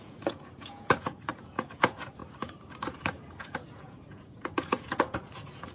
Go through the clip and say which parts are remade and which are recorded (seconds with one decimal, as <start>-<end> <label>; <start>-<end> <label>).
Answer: 0.0-2.2 remade; 2.2-2.8 recorded; 2.8-5.7 remade